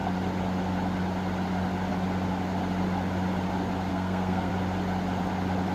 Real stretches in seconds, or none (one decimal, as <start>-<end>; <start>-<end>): 0.0-3.9; 4.5-5.7